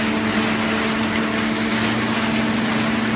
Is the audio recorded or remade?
recorded